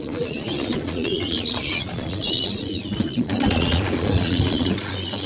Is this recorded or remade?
remade